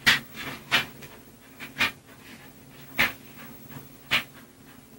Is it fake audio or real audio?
real